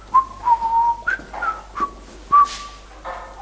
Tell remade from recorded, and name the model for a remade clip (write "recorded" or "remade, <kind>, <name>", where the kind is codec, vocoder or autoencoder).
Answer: recorded